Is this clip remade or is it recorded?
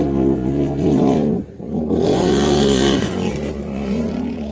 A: remade